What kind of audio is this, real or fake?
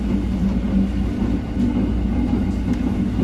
real